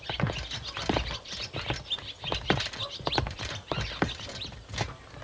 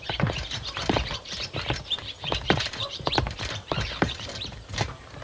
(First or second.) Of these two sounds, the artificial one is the second